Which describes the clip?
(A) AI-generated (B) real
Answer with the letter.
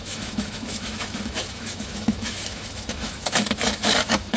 A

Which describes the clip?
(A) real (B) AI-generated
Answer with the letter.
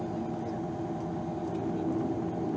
A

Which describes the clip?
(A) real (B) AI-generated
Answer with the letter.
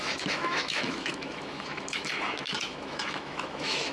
B